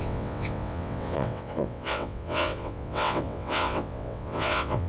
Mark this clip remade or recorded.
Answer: remade